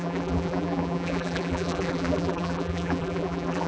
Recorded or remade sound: remade